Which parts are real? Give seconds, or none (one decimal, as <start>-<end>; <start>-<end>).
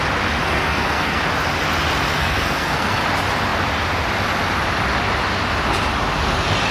0.0-0.4; 1.2-2.2; 3.0-6.7